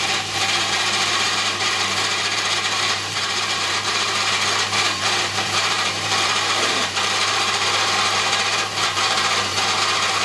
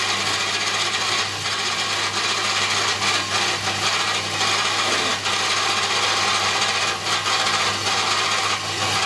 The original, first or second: second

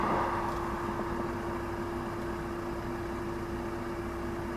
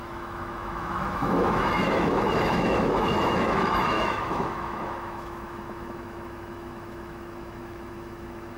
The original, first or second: first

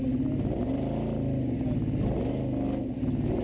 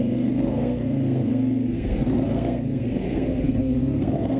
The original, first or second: first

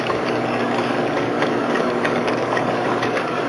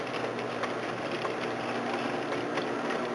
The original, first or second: second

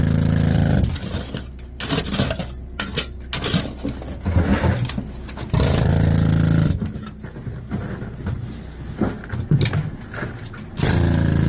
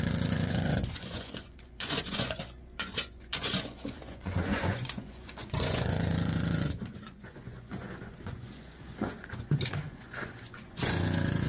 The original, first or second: first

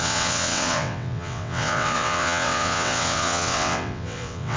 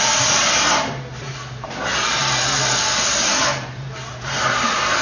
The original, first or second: second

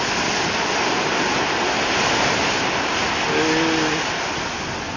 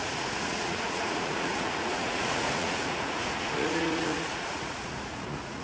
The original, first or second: first